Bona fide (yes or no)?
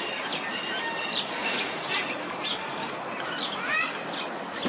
yes